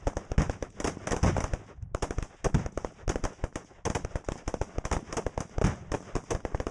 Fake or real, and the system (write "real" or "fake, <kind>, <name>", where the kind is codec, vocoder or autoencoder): real